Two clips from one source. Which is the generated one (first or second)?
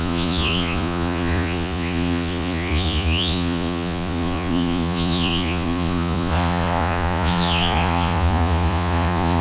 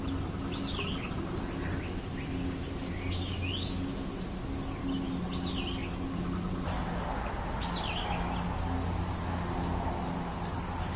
first